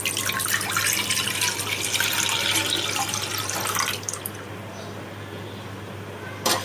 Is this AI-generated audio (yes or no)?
no